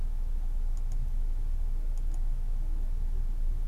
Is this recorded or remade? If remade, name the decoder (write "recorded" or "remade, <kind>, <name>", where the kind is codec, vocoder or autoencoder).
recorded